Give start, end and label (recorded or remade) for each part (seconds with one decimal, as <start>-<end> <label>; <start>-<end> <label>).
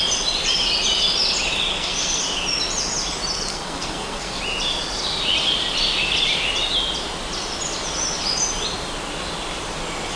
0.0-1.7 recorded; 1.7-2.2 remade; 2.2-3.5 recorded; 3.5-4.4 remade; 4.4-10.2 recorded